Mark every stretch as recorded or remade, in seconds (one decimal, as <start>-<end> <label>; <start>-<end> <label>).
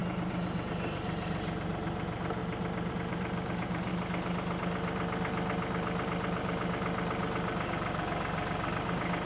0.0-0.7 recorded; 0.7-2.4 remade; 2.4-2.9 recorded; 2.9-3.9 remade; 3.9-9.3 recorded